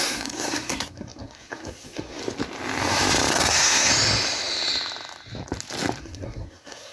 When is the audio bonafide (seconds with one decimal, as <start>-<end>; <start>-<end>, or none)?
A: 2.2-3.3; 3.9-6.0